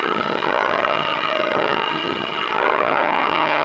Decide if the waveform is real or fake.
fake